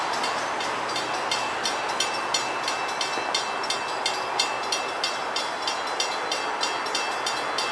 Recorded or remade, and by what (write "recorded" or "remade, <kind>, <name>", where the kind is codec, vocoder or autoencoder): recorded